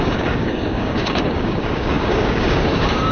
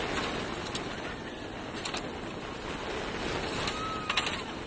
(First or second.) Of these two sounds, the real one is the second